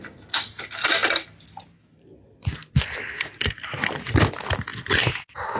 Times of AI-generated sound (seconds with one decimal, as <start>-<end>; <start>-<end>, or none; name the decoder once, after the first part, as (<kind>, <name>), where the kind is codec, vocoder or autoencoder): none